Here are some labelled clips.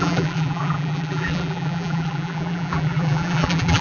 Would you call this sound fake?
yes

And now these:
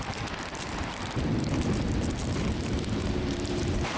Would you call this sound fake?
yes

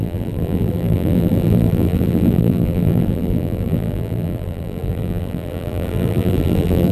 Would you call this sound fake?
yes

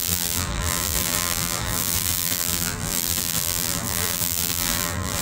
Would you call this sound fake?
yes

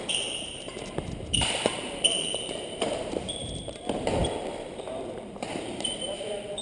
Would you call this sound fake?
yes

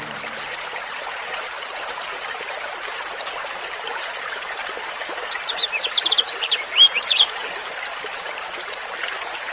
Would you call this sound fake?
yes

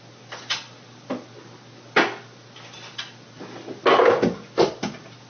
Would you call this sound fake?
no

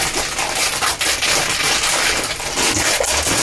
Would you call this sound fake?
no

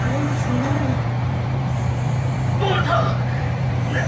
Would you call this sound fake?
yes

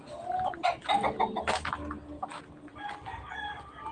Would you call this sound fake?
no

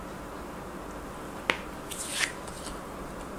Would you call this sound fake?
no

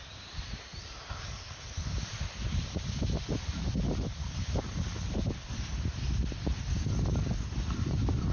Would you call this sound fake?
yes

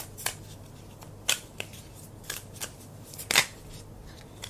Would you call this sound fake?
no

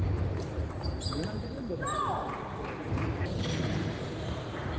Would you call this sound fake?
yes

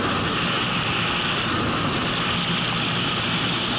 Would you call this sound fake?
no